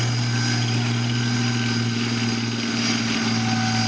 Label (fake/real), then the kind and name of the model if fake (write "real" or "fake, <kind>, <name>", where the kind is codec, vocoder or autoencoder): real